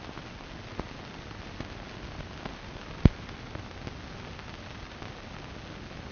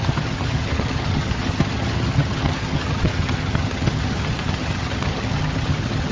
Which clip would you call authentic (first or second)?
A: first